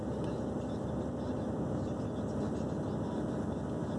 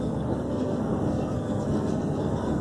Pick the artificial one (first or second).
second